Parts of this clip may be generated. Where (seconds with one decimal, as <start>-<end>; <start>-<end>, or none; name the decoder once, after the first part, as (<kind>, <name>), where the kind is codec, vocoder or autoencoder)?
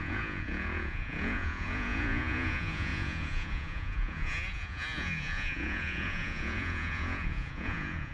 0.0-8.1 (vocoder, Vocos)